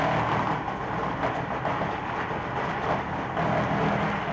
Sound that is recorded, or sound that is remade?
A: recorded